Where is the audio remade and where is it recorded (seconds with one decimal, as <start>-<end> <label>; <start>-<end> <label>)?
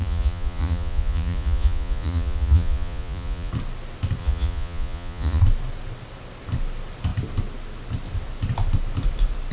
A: 0.0-3.5 remade; 3.5-4.2 recorded; 4.2-5.4 remade; 5.4-9.5 recorded